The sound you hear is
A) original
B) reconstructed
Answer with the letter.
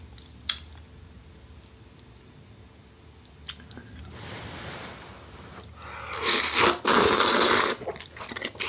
A